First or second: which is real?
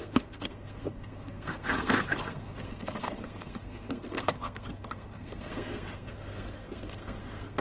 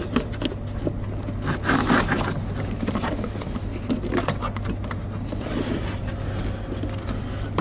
second